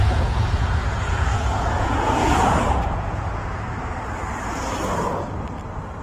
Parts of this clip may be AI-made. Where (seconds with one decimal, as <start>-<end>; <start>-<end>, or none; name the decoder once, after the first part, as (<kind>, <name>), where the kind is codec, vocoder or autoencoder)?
0.0-3.6 (vocoder, Vocos)